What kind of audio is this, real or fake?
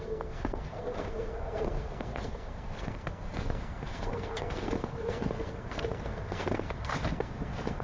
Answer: fake